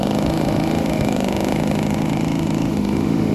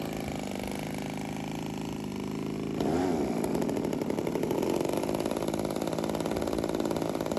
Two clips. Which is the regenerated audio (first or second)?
first